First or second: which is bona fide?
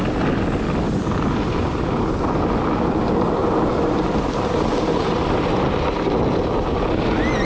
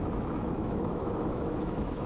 first